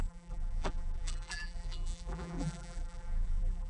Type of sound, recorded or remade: remade